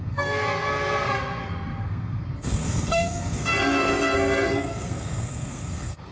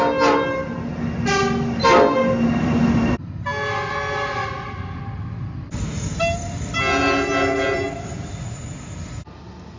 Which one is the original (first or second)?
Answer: second